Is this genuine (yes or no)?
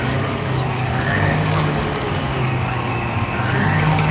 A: no